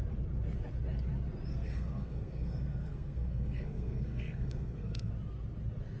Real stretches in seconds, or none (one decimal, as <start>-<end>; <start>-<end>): 0.0-1.5; 5.1-6.0